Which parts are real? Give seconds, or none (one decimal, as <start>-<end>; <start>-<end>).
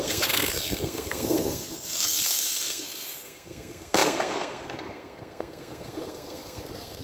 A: none